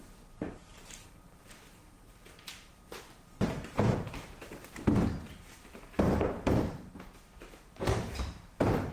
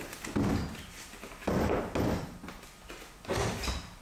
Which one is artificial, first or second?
first